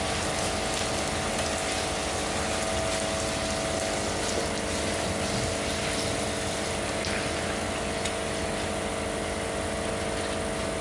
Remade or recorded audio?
recorded